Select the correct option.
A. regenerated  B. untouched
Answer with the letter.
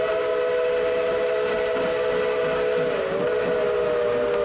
B